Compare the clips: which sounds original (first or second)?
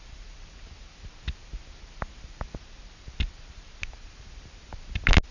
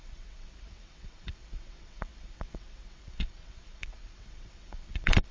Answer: first